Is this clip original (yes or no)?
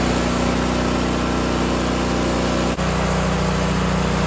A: yes